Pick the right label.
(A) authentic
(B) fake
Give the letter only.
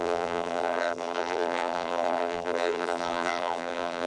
B